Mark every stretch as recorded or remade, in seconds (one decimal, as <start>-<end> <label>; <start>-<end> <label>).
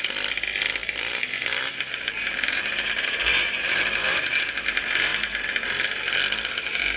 0.0-0.8 recorded; 0.8-4.4 remade; 4.4-7.0 recorded